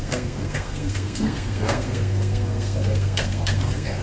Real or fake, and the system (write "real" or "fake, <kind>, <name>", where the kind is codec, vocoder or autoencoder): fake, codec, SNAC